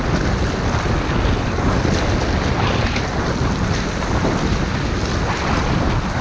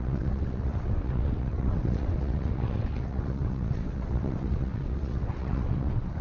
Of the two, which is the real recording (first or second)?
first